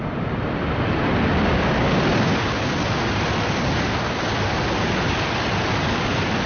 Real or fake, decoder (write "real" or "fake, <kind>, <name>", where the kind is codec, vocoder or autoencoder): real